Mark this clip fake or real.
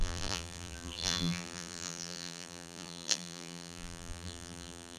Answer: fake